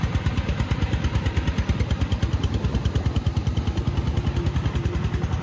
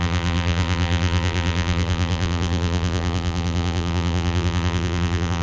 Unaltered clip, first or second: first